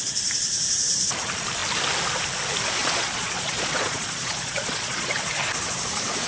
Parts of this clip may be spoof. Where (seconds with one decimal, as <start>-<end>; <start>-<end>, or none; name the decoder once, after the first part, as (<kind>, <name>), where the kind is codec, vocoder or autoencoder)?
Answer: 2.8-5.2 (vocoder, Vocos)